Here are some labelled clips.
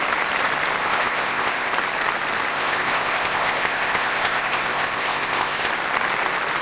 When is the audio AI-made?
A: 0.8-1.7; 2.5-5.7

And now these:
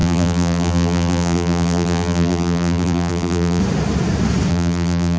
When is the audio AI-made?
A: 0.0-3.6; 4.5-5.2